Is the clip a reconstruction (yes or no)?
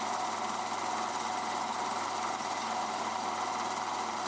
no